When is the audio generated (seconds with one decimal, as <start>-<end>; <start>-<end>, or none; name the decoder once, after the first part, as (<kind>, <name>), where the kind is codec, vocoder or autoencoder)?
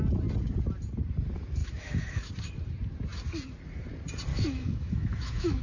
1.6-2.3 (autoencoder, DAC-VAE); 4.3-5.6